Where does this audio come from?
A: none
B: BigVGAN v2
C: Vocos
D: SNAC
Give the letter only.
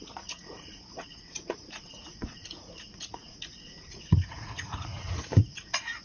C